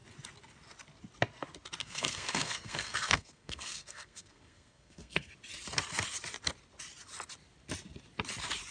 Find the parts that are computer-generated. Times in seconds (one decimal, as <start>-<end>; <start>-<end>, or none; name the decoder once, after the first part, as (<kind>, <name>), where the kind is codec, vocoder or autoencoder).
1.8-5.3 (codec, SNAC)